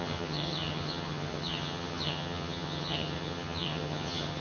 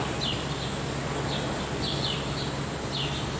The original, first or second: second